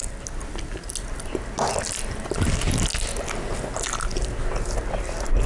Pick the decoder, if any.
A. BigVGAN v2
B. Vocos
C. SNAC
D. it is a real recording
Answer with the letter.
D